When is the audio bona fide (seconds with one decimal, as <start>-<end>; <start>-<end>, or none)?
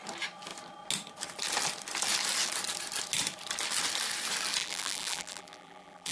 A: 0.0-4.6